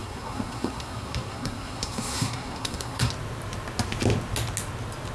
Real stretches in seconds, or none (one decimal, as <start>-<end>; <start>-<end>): 3.1-5.1